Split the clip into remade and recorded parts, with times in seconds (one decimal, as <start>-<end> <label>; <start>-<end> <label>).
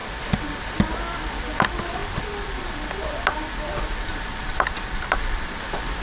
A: 0.0-0.6 remade; 0.6-2.0 recorded; 2.0-5.6 remade; 5.6-6.0 recorded